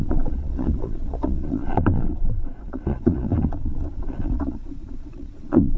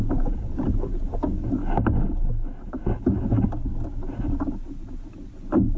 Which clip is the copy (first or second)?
first